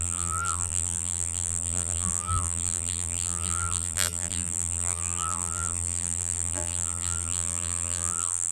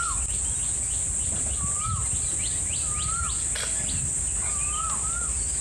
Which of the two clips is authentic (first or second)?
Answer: second